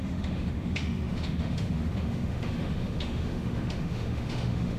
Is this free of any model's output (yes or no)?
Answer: no